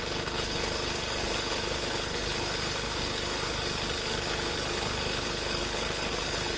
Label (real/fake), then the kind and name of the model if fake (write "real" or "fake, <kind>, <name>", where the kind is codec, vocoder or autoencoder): fake, codec, HILCodec